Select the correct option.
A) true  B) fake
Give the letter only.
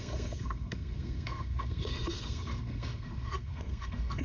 B